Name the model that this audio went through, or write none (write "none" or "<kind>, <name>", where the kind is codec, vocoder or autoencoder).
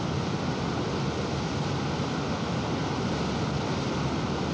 none